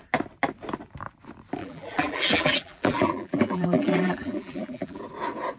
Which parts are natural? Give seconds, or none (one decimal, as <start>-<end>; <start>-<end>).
0.0-1.6; 5.0-5.6